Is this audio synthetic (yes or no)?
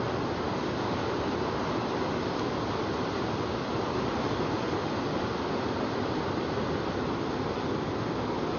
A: no